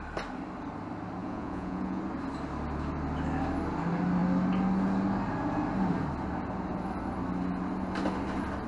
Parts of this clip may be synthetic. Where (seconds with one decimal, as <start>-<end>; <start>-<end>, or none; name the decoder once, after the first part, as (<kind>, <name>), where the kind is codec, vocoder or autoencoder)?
1.2-2.0 (vocoder, Vocos)